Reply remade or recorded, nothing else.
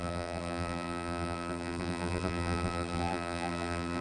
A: remade